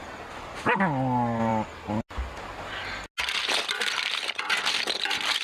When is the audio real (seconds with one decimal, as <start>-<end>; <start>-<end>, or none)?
0.0-5.4